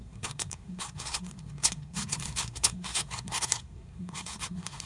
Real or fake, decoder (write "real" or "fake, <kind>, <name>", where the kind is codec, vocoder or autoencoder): fake, codec, SNAC